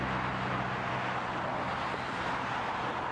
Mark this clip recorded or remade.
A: recorded